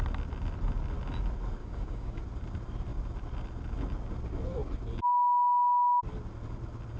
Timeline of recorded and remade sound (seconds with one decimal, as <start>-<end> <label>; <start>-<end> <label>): 0.0-1.6 recorded; 1.6-2.2 remade; 2.2-7.0 recorded